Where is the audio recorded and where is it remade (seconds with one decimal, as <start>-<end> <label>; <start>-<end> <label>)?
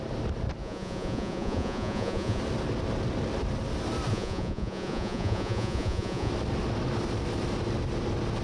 0.0-0.6 recorded; 0.6-2.4 remade; 2.4-4.1 recorded; 4.1-6.3 remade; 6.3-8.4 recorded